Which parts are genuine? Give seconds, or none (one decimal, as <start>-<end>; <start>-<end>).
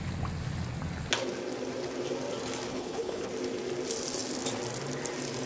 0.0-2.7; 3.3-5.5